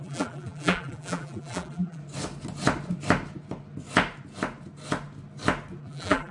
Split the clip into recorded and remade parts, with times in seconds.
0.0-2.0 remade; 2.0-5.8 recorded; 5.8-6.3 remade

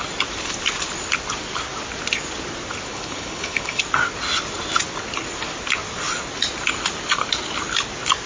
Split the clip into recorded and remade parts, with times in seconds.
0.0-2.9 recorded; 2.9-3.8 remade; 3.8-8.3 recorded